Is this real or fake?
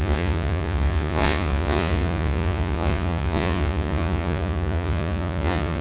fake